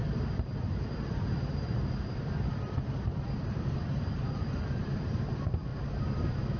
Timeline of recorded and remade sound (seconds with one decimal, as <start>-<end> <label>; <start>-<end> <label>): 0.0-0.6 recorded; 0.6-5.7 remade; 5.7-6.6 recorded